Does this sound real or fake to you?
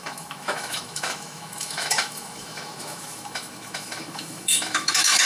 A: fake